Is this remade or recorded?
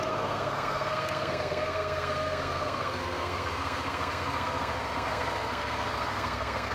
remade